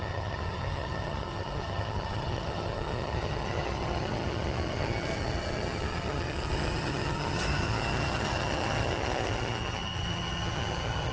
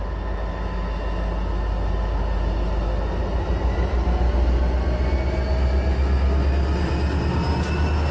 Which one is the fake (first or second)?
first